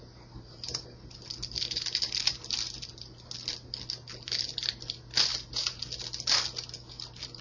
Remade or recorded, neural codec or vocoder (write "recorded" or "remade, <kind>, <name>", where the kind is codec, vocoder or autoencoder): recorded